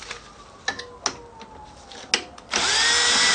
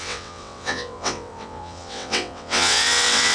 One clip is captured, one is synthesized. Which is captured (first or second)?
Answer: first